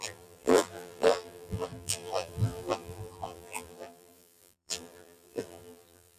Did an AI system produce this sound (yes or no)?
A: yes